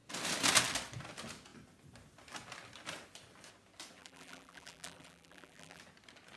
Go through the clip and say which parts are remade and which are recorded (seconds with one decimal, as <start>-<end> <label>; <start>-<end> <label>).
0.0-4.0 recorded; 4.0-5.8 remade; 5.8-6.4 recorded